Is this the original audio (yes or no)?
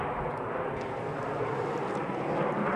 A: yes